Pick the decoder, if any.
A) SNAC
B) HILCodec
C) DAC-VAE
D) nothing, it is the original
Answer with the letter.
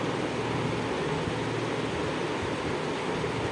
D